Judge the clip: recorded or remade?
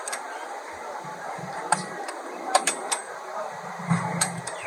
remade